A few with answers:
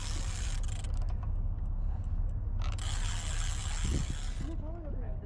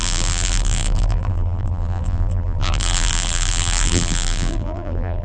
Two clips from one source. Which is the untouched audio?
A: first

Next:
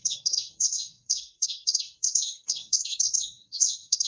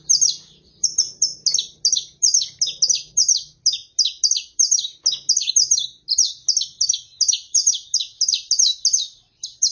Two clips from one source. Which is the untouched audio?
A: second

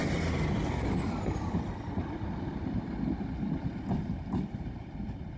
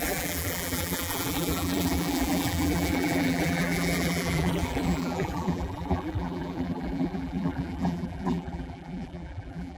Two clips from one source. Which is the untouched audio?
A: first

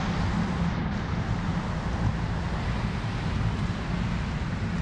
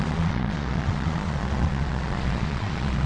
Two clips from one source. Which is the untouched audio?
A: first